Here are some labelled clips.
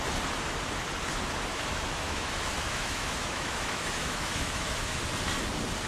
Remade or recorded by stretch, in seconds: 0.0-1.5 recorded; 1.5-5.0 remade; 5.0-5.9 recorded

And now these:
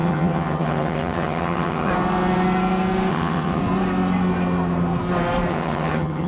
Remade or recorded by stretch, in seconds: 0.0-1.9 remade; 1.9-3.1 recorded; 3.1-3.6 remade; 3.6-5.5 recorded; 5.5-6.3 remade

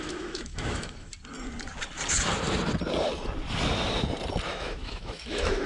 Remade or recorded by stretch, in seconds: 0.0-1.1 remade; 1.1-4.5 recorded; 4.5-5.7 remade

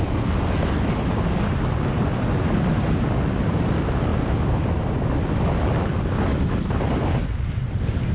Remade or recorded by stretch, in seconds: 0.0-8.1 recorded

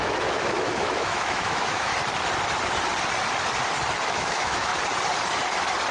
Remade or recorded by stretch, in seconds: 0.0-1.9 remade; 1.9-4.1 recorded; 4.1-4.7 remade; 4.7-5.9 recorded

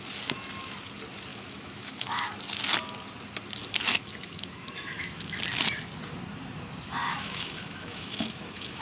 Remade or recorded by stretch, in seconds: 0.0-1.3 recorded; 1.3-2.2 remade; 2.2-3.9 recorded; 3.9-5.4 remade; 5.4-7.0 recorded; 7.0-8.8 remade

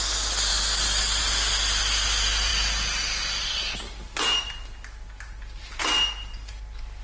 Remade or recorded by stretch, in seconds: 0.0-7.0 recorded

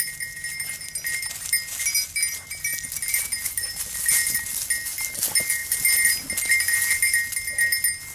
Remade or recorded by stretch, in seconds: 0.0-8.1 recorded